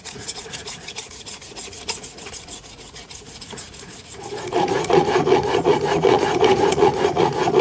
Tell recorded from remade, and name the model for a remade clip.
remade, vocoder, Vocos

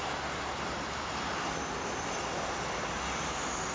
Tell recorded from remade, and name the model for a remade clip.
recorded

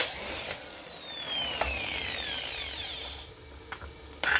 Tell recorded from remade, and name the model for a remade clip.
recorded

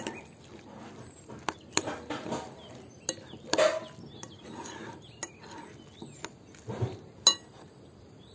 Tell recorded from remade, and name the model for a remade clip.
recorded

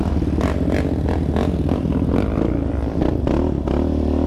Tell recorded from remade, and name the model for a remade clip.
recorded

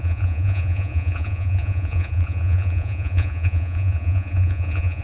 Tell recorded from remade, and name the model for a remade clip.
remade, vocoder, Vocos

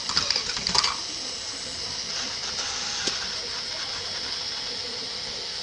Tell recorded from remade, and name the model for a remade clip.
recorded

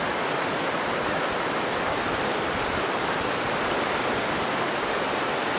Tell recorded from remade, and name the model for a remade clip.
recorded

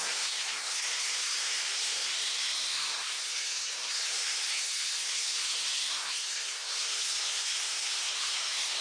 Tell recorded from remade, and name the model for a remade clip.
remade, codec, SNAC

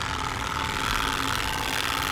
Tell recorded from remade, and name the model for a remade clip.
recorded